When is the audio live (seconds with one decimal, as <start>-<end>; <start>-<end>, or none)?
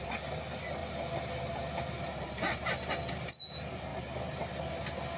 0.0-5.2